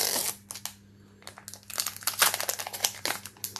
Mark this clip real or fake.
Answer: real